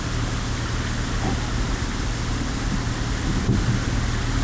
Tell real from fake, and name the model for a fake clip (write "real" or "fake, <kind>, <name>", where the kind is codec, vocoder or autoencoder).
real